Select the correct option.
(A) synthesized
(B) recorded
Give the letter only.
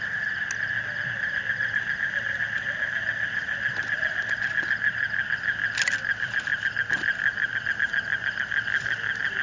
B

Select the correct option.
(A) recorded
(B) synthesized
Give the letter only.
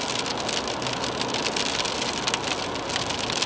A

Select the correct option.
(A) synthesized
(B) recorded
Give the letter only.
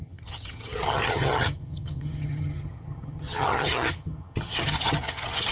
A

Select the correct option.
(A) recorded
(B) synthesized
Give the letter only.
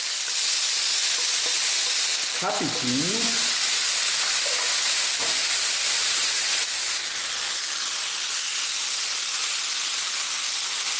A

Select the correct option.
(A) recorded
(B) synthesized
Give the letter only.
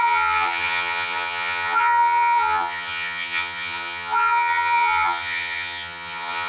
B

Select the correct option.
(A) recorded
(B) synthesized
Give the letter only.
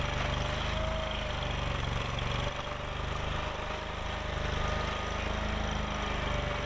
A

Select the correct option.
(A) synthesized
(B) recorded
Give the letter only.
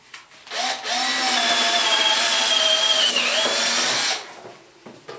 B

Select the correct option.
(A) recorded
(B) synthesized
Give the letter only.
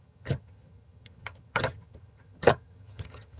B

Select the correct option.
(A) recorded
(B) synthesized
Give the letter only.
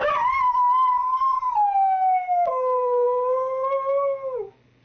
A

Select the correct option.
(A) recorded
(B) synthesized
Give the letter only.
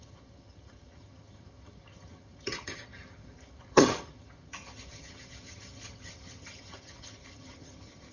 B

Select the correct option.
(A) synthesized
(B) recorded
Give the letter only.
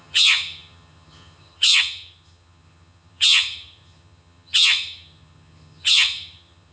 A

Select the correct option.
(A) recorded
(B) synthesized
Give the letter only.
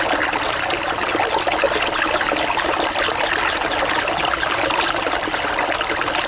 A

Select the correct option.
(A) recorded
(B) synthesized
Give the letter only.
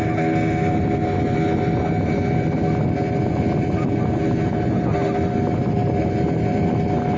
A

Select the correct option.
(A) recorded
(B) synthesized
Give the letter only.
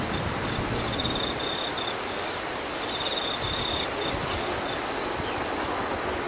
A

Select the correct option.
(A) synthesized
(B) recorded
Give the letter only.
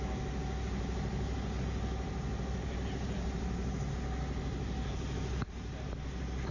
B